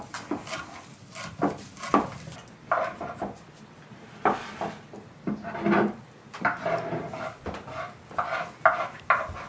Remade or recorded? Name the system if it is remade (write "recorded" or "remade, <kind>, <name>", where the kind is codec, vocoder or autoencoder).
recorded